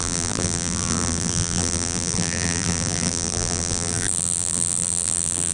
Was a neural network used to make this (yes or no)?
yes